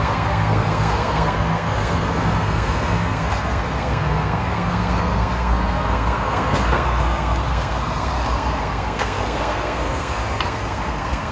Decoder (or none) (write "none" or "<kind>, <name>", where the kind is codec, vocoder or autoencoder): codec, SNAC